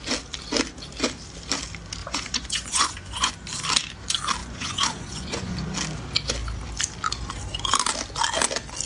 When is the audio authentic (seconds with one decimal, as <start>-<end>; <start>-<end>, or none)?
0.0-2.0; 3.3-4.4; 5.6-8.9